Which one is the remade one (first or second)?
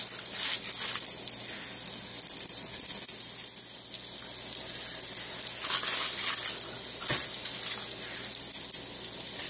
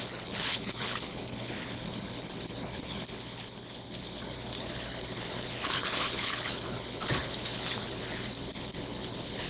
second